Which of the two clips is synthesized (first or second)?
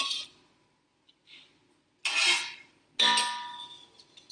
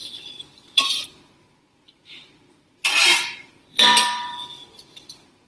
second